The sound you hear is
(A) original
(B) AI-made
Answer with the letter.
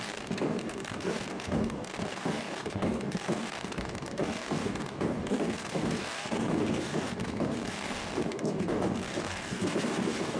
B